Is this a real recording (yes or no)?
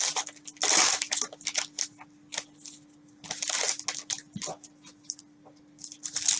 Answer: yes